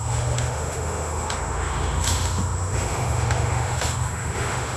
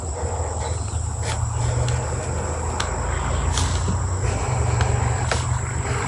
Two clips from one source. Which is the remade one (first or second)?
first